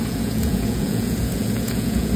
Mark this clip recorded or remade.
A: remade